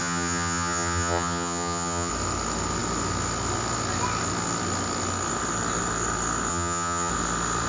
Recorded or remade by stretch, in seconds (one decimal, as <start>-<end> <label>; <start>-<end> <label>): 0.0-2.1 remade; 2.1-6.5 recorded; 6.5-7.1 remade; 7.1-7.7 recorded